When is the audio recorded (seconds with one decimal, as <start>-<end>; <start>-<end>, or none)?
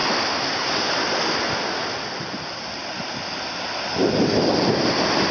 0.0-5.3